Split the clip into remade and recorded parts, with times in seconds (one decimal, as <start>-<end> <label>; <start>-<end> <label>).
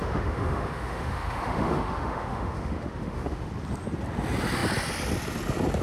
0.0-3.5 remade; 3.5-5.8 recorded